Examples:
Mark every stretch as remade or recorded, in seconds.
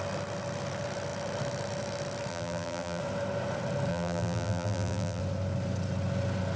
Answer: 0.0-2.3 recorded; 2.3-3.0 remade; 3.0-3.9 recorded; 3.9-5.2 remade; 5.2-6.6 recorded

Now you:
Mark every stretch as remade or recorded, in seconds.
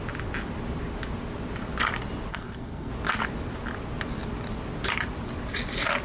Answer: 0.0-2.3 recorded; 2.3-2.9 remade; 2.9-6.0 recorded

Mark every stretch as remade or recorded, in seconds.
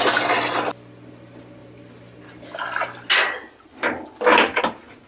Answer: 0.0-5.1 recorded